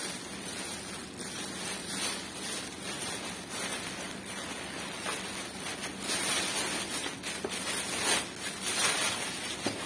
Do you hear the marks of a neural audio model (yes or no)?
no